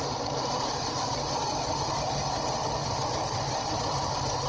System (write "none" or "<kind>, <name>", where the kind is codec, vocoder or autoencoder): none